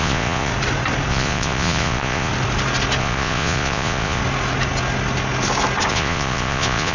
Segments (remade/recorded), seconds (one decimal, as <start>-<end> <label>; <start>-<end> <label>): 0.0-0.5 remade; 0.5-1.1 recorded; 1.1-2.3 remade; 2.3-3.0 recorded; 3.0-4.2 remade; 4.2-5.9 recorded; 5.9-6.9 remade